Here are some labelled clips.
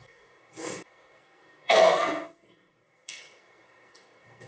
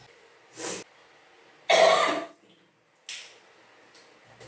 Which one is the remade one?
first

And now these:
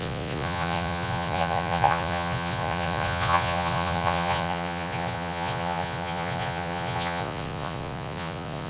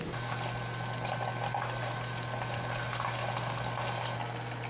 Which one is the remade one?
first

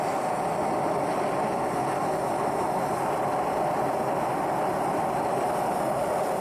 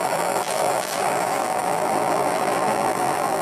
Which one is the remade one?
second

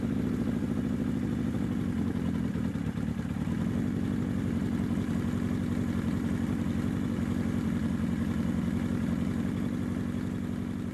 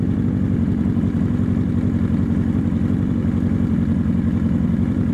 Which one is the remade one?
second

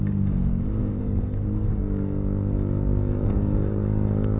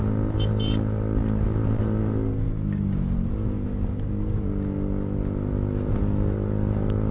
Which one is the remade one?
first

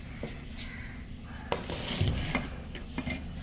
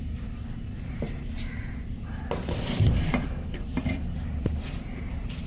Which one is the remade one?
second